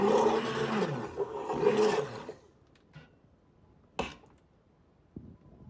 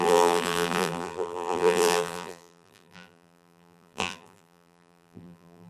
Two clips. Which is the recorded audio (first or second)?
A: first